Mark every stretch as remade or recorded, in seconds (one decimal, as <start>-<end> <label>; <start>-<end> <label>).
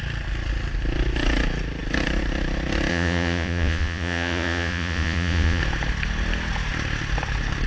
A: 0.0-2.9 recorded; 2.9-5.6 remade; 5.6-7.7 recorded